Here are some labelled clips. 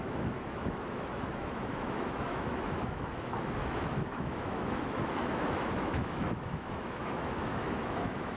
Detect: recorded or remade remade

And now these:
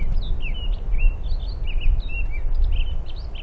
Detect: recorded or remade recorded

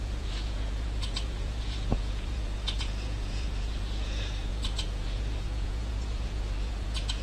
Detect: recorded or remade remade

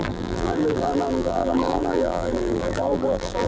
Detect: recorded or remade remade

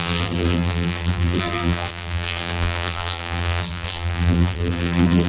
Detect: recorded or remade remade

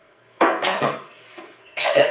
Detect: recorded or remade remade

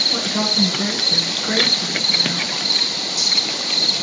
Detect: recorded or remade recorded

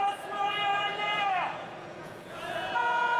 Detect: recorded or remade remade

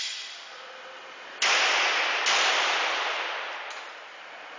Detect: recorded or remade recorded